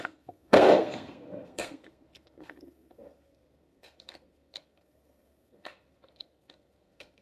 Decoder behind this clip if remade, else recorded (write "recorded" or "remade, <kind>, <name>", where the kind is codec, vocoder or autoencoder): remade, codec, SNAC